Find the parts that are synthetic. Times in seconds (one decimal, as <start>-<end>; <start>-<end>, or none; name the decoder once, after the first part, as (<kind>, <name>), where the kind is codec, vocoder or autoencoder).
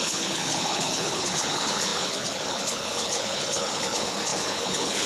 0.0-5.1 (codec, HILCodec)